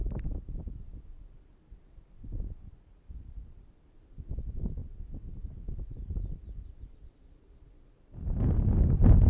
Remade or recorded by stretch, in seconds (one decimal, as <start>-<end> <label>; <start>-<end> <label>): 0.0-9.3 recorded

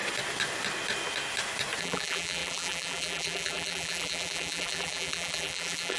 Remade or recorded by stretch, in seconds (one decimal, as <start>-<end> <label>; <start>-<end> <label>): 0.0-1.8 recorded; 1.8-6.0 remade

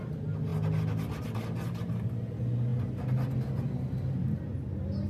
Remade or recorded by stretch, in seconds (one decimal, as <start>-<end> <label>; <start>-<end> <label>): 0.0-5.1 recorded

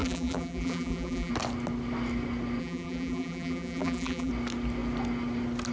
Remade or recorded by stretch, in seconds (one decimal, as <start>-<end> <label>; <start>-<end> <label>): 0.0-1.3 remade; 1.3-2.6 recorded; 2.6-4.3 remade; 4.3-5.7 recorded

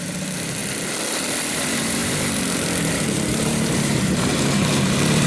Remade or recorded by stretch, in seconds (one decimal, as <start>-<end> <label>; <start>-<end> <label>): 0.0-0.6 remade; 0.6-1.5 recorded; 1.5-5.3 remade